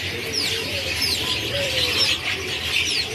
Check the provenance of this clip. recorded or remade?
remade